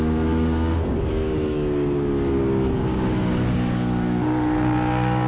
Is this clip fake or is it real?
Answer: fake